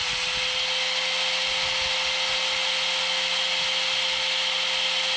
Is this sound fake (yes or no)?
no